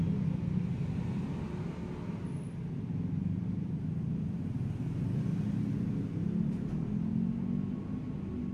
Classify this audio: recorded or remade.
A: recorded